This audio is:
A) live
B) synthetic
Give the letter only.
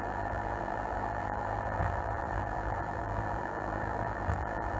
B